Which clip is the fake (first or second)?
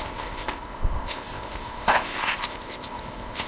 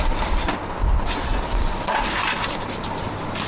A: first